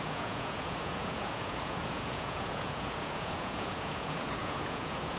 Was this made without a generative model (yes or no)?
no